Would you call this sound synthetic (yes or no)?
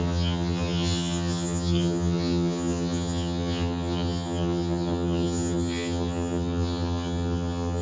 yes